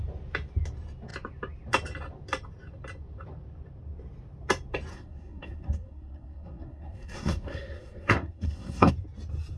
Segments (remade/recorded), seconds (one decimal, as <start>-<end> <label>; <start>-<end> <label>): 0.0-4.9 recorded; 4.9-8.9 remade; 8.9-9.6 recorded